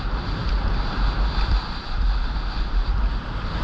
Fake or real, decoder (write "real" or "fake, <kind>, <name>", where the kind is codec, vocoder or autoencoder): real